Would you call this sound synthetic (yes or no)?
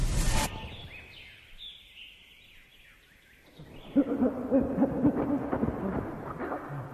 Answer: no